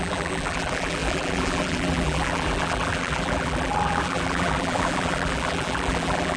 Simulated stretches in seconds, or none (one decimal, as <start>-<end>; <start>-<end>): 0.0-6.4